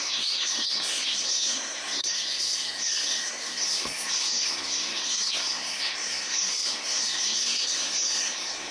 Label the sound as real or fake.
fake